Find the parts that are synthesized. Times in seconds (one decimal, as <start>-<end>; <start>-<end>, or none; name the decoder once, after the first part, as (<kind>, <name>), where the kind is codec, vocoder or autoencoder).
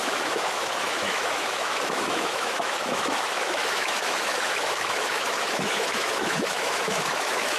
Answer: 0.0-7.6 (autoencoder, DAC-VAE)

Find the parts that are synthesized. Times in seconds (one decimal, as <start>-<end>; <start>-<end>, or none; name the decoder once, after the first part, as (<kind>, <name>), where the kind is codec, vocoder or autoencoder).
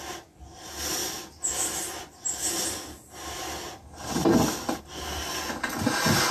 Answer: none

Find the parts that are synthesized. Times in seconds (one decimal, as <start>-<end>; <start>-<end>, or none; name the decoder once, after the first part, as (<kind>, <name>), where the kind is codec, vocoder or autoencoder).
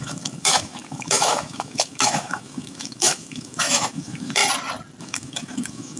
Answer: 0.0-4.4 (autoencoder, DAC-VAE); 5.0-6.0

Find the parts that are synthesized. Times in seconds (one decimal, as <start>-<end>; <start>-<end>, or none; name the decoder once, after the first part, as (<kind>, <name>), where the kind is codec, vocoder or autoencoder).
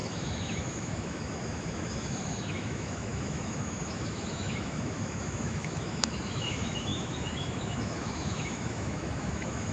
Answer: 0.0-9.7 (autoencoder, DAC-VAE)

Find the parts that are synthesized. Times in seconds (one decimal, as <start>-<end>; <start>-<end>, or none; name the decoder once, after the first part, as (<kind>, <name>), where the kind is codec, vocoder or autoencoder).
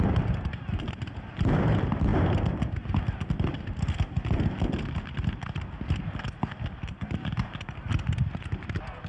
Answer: none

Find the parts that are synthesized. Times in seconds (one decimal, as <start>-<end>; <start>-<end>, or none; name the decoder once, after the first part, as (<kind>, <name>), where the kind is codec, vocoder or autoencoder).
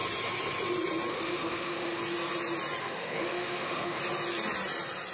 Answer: 1.1-2.0 (autoencoder, DAC-VAE); 2.8-4.0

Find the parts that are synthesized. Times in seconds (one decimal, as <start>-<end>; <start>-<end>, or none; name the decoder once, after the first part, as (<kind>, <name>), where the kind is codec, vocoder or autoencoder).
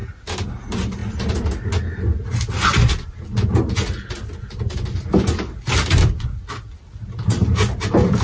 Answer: none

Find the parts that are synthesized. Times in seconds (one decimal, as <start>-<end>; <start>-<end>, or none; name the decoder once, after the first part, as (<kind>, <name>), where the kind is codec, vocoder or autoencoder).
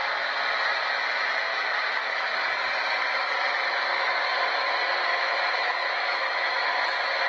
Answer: 1.5-2.4 (autoencoder, DAC-VAE); 5.1-6.6